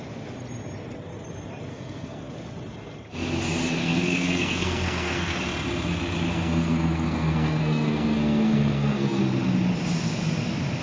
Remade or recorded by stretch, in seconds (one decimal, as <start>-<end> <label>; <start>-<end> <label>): 0.0-1.7 recorded; 1.7-2.2 remade; 2.2-3.8 recorded; 3.8-5.4 remade; 5.4-6.3 recorded; 6.3-9.2 remade; 9.2-10.8 recorded